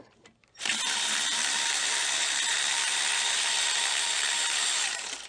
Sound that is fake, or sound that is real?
fake